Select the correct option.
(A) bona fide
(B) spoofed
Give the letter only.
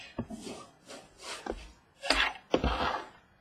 A